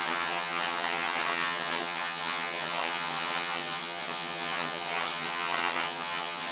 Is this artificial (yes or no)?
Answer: yes